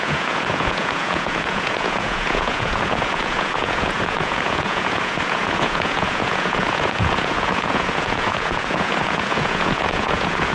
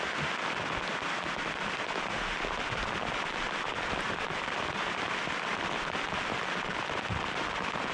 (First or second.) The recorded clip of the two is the second